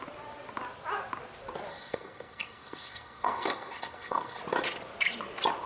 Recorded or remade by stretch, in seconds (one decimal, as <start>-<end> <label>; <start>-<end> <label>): 0.0-1.7 recorded; 1.7-4.4 remade; 4.4-5.7 recorded

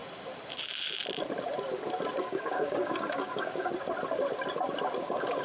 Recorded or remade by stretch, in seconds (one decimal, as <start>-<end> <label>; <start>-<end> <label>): 0.0-2.2 recorded; 2.2-3.7 remade; 3.7-5.0 recorded; 5.0-5.4 remade

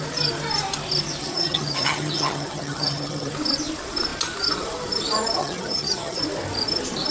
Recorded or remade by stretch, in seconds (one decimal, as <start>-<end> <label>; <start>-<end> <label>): 0.0-1.2 recorded; 1.2-3.3 remade; 3.3-5.4 recorded; 5.4-6.2 remade; 6.2-7.1 recorded

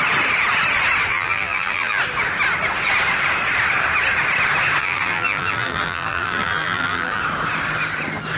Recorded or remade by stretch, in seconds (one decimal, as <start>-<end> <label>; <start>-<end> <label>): 0.0-1.1 recorded; 1.1-2.0 remade; 2.0-4.8 recorded; 4.8-7.2 remade; 7.2-8.4 recorded

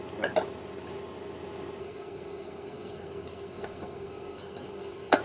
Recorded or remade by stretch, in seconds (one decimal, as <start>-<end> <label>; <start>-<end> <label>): 0.0-1.8 recorded; 1.8-5.2 remade

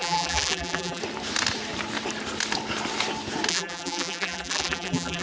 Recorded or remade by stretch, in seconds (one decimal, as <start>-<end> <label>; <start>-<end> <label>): 0.0-1.0 remade; 1.0-3.5 recorded; 3.5-5.2 remade

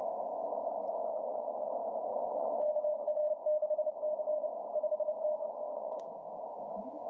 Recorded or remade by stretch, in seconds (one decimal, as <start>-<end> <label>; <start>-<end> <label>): 0.0-1.1 recorded; 1.1-1.7 remade; 1.7-2.1 recorded; 2.1-3.3 remade; 3.3-5.4 recorded; 5.4-6.0 remade; 6.0-7.1 recorded

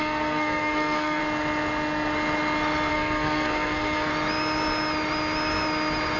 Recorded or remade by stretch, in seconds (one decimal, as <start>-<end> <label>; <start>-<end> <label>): 0.0-1.2 remade; 1.2-2.9 recorded; 2.9-4.1 remade; 4.1-6.2 recorded